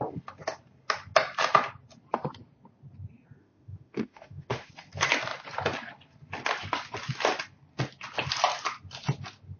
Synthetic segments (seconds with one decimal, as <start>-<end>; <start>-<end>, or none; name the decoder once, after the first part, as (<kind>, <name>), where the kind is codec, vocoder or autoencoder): 3.4-4.7 (autoencoder, DAC-VAE)